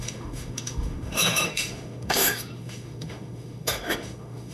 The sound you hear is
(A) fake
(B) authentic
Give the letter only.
A